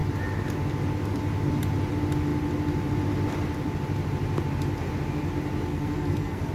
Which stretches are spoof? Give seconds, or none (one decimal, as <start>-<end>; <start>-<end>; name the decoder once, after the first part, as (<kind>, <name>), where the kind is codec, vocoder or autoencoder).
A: 5.7-6.5 (codec, SNAC)